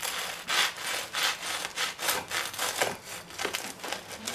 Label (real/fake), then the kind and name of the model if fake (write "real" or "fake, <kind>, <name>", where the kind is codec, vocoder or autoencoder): real